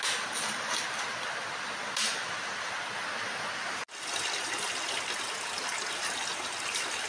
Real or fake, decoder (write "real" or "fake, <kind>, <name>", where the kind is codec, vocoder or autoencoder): real